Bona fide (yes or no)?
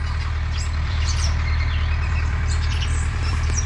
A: no